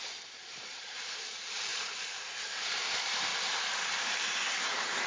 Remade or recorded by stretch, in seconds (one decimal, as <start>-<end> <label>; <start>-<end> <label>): 0.0-3.3 remade; 3.3-4.6 recorded; 4.6-5.1 remade